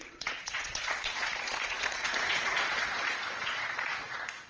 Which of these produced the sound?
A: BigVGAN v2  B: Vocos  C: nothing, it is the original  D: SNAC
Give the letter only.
B